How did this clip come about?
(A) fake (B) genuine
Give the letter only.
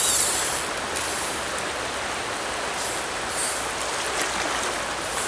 B